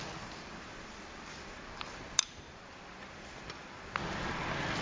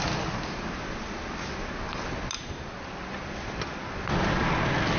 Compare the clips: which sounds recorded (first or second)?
second